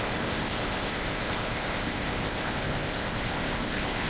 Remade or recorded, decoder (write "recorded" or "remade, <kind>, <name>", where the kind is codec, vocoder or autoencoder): remade, codec, ZipCodec